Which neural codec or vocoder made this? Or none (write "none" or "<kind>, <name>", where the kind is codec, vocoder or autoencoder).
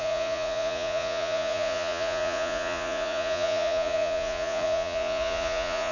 vocoder, Vocos